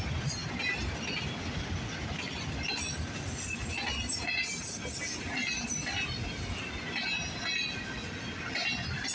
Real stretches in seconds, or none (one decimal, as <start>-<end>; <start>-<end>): 0.0-9.1